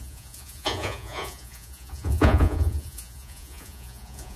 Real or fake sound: fake